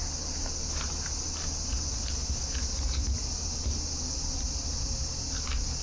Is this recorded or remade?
recorded